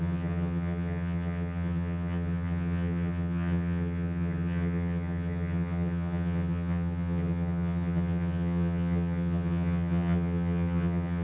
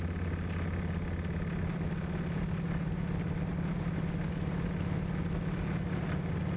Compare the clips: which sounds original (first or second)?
second